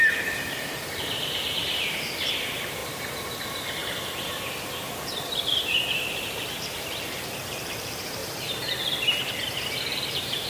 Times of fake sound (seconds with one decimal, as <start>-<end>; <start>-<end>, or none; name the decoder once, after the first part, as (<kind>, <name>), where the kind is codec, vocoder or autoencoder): 0.0-2.8 (vocoder, BigVGAN v2); 3.4-3.8; 5.5-8.2; 9.8-10.5